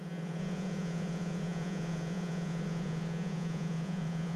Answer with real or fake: fake